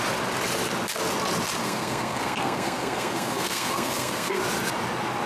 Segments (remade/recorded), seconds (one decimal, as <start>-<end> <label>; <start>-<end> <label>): 0.0-1.6 recorded; 1.6-4.4 remade; 4.4-5.3 recorded

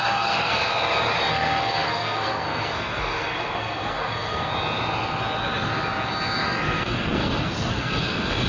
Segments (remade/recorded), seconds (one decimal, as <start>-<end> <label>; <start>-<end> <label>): 0.0-0.6 remade; 0.6-1.3 recorded; 1.3-4.5 remade; 4.5-6.4 recorded; 6.4-8.5 remade

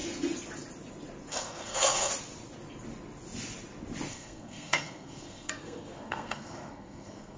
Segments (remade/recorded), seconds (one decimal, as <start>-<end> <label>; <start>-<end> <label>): 0.0-1.3 recorded; 1.3-2.1 remade; 2.1-4.1 recorded; 4.1-7.4 remade

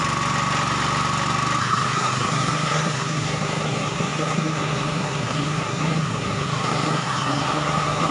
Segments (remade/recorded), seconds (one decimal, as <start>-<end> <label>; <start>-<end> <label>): 0.0-1.6 recorded; 1.6-8.1 remade